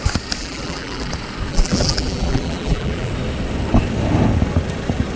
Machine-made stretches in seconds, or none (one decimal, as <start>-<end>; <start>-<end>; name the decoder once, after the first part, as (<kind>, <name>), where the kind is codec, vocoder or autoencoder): 0.4-1.1 (vocoder, BigVGAN v2); 1.5-3.1

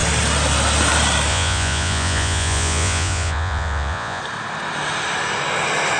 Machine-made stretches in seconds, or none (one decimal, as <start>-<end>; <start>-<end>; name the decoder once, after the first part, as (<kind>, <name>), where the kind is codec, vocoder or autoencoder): 1.3-4.2 (vocoder, Vocos)

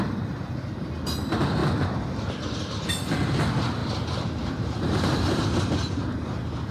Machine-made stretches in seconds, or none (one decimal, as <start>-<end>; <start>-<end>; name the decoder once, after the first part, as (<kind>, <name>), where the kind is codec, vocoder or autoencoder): 3.8-5.7 (vocoder, BigVGAN v2)